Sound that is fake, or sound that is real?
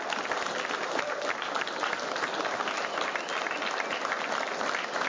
real